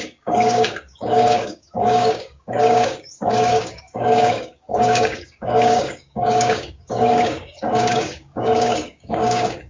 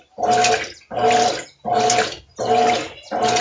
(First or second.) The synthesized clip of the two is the first